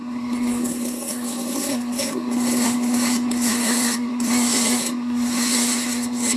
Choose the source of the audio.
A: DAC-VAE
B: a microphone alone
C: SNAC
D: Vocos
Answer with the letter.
C